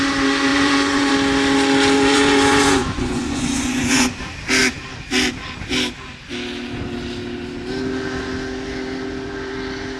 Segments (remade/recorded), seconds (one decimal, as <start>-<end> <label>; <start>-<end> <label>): 0.0-0.5 recorded; 0.5-1.1 remade; 1.1-2.1 recorded; 2.1-4.1 remade; 4.1-10.0 recorded